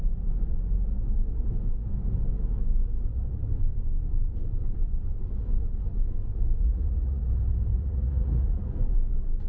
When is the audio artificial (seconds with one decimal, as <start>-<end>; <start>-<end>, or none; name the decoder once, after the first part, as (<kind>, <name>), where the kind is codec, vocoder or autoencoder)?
6.6-7.2 (vocoder, Vocos); 7.7-8.6

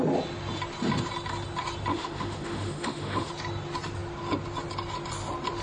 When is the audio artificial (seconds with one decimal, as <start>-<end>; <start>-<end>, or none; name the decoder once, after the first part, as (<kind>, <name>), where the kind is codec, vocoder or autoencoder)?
1.9-3.3 (autoencoder, DAC-VAE)

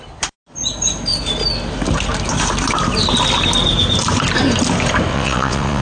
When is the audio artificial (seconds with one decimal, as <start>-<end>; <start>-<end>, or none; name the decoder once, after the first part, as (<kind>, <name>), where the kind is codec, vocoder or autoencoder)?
5.1-5.8 (vocoder, WaveNeXt)